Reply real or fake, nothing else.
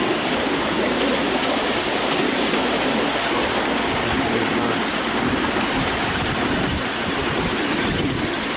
real